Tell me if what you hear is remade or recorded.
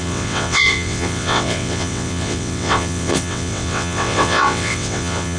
remade